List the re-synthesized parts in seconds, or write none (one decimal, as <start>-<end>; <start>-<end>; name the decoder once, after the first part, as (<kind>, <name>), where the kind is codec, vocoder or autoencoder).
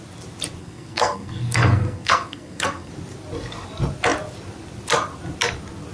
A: 0.6-2.9 (codec, SNAC)